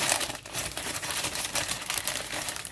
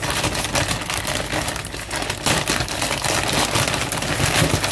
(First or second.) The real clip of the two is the second